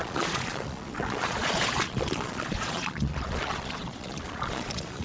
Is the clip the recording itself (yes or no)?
no